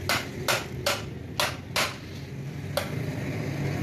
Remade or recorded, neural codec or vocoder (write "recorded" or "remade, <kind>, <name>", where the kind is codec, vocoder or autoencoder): recorded